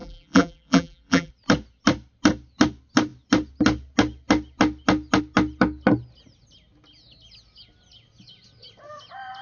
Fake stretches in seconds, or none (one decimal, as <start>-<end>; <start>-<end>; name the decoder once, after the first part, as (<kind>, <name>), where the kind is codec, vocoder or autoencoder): 0.0-1.3 (vocoder, BigVGAN v2)